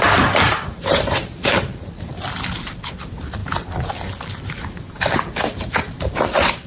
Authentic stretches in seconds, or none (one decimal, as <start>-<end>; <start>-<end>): 1.7-2.4; 3.4-4.4